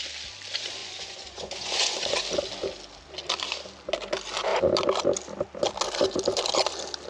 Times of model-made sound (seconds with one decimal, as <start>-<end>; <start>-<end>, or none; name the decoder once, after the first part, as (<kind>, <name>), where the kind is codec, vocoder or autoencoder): 0.8-2.2 (vocoder, Vocos)